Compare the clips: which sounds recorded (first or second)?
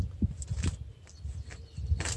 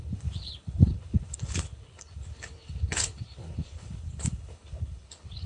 first